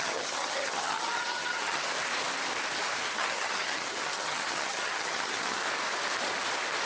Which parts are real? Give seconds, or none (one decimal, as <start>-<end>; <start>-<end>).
1.8-3.1; 5.6-6.9